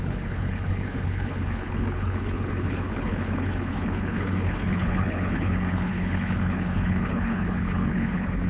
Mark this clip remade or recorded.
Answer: remade